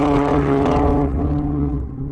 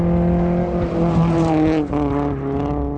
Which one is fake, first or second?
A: first